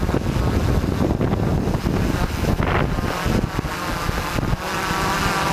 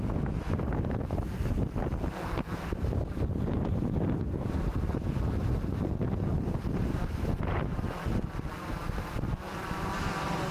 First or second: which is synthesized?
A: second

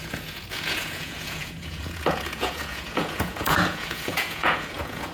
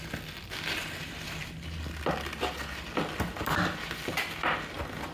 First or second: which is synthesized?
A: first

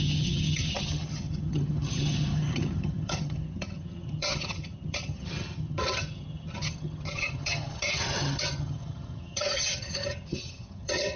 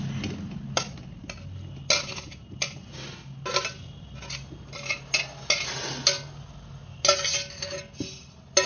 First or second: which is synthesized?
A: first